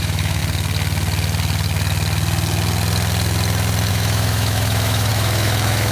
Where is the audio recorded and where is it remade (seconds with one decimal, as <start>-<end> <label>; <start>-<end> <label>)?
0.0-0.4 remade; 0.4-3.9 recorded; 3.9-5.9 remade